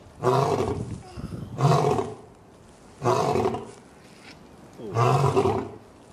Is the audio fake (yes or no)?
no